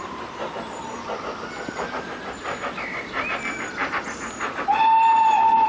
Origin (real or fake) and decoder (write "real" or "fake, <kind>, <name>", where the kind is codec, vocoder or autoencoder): real